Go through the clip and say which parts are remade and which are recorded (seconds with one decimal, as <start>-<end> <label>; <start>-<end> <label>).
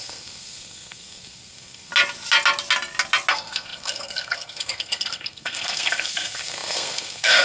0.0-1.9 remade; 1.9-3.3 recorded; 3.3-7.4 remade